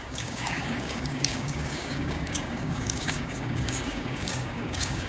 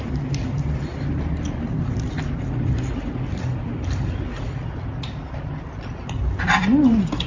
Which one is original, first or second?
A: second